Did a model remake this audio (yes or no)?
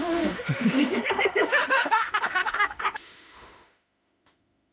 yes